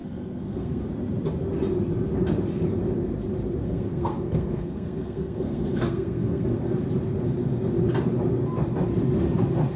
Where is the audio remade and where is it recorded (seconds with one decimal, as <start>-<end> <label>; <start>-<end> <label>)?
0.0-0.9 remade; 0.9-3.6 recorded; 3.6-6.6 remade; 6.6-9.8 recorded